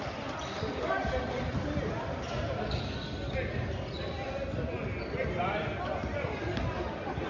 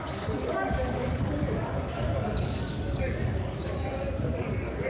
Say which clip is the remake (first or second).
second